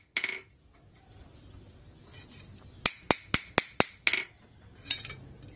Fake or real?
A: real